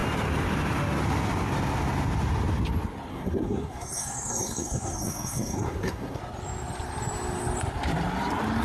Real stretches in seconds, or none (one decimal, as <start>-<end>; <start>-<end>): 0.0-3.1; 6.2-8.6